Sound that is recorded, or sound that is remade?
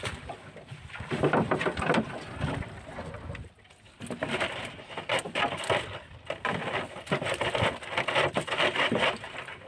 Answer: recorded